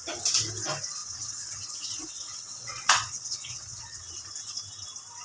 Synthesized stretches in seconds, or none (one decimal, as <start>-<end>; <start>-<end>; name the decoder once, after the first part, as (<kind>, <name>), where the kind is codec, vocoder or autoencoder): 1.0-4.1 (vocoder, WaveNeXt)